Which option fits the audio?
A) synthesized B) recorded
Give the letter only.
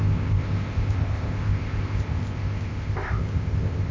A